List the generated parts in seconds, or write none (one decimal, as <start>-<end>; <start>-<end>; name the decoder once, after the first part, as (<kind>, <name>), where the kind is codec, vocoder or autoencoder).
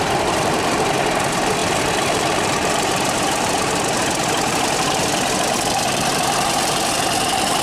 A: 0.0-7.6 (vocoder, BigVGAN v2)